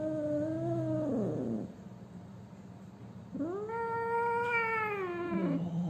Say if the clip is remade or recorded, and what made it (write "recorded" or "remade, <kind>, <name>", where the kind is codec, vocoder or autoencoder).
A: recorded